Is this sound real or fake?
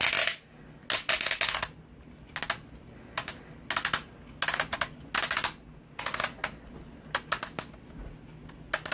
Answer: real